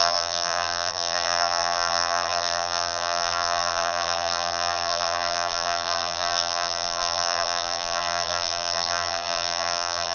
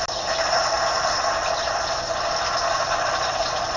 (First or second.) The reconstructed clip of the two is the first